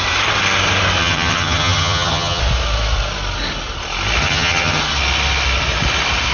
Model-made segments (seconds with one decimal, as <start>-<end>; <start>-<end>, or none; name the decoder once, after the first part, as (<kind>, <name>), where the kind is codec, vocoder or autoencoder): 1.0-2.4 (vocoder, HiFi-GAN); 4.2-4.8